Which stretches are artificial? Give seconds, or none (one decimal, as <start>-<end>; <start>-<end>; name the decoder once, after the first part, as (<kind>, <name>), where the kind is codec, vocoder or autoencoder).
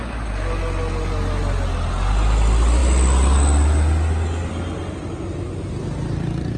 none